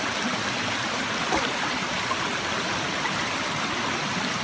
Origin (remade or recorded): recorded